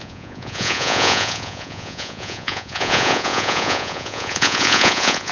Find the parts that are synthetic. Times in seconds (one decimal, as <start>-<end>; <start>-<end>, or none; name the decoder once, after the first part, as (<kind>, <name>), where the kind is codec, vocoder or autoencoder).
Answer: 0.0-5.3 (vocoder, Vocos)

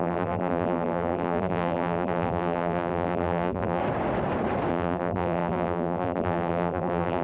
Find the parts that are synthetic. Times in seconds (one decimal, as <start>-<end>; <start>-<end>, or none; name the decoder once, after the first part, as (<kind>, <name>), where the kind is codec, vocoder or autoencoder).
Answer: 0.0-3.8 (vocoder, BigVGAN v2); 4.7-7.2

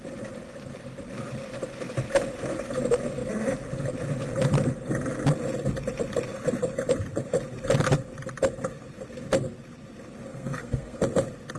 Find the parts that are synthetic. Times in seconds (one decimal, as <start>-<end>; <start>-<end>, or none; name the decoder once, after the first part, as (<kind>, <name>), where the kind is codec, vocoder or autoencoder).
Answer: 10.3-11.0 (codec, SNAC)

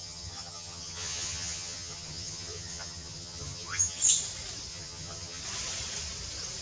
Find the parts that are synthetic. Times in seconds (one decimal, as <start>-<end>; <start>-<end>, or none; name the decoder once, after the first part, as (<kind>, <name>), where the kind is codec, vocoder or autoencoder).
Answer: 0.0-4.0 (vocoder, HiFi-GAN); 4.7-5.4